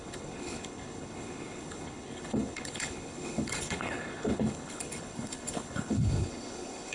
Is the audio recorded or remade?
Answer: remade